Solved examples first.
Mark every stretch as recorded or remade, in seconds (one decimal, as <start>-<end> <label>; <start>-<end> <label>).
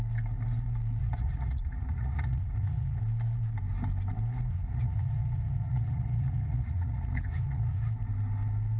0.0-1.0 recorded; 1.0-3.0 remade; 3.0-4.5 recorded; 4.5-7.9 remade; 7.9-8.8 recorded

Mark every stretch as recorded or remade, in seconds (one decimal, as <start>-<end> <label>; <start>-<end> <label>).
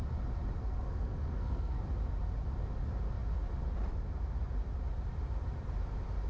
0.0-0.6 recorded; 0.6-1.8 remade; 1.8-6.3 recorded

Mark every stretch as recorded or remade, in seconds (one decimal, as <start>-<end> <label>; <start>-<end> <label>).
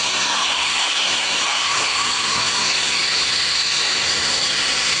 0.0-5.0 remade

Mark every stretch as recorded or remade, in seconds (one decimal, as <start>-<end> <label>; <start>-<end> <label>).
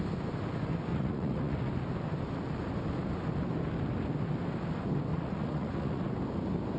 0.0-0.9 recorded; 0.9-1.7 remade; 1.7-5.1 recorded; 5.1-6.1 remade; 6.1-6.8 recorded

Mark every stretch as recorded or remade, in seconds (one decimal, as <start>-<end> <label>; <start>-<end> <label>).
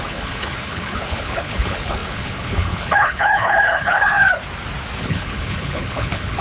0.0-4.3 remade; 4.3-5.0 recorded; 5.0-6.4 remade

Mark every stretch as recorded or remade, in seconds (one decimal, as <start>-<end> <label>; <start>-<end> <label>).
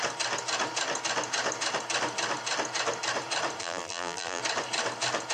0.0-3.6 recorded; 3.6-4.4 remade; 4.4-5.3 recorded